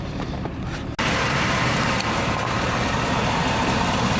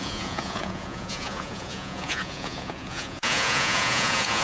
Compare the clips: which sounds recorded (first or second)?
first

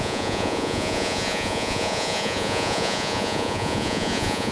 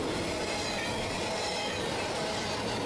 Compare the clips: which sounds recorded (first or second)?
second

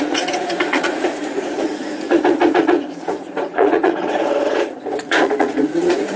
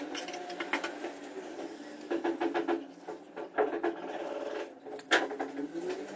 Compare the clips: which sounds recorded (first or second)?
second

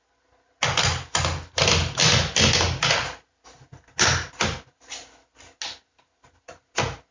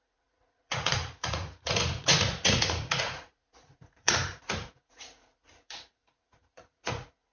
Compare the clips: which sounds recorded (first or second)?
first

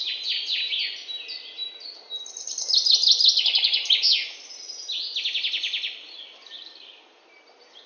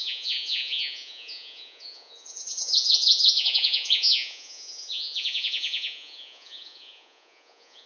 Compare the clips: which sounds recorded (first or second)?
first